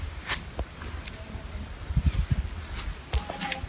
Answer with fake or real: real